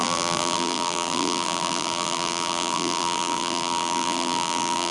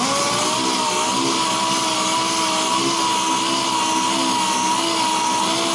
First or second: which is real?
second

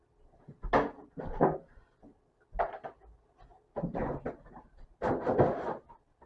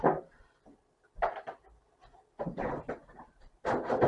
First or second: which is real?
first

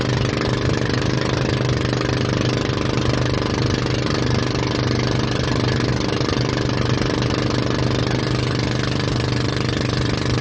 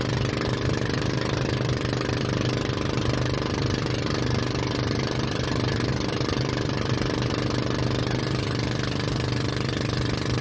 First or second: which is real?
first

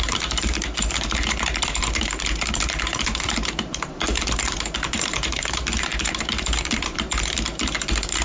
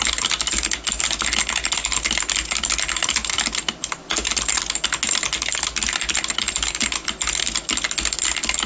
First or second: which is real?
second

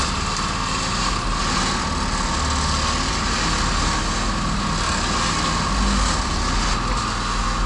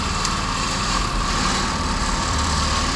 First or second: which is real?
first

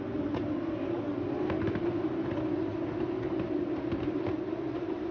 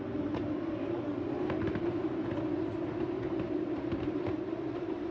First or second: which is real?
first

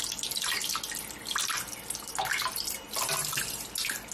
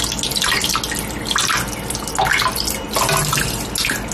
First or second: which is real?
second